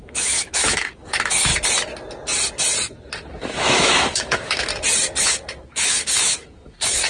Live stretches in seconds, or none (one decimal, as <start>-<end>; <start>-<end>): 1.5-3.4; 4.7-5.2